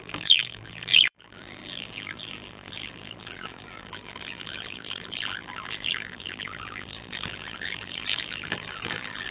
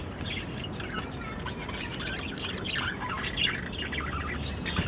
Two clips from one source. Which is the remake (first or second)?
first